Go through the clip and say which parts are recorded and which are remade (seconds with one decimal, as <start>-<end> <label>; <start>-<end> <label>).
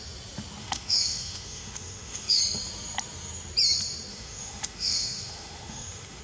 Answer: 0.0-0.6 recorded; 0.6-2.4 remade; 2.4-4.1 recorded; 4.1-6.2 remade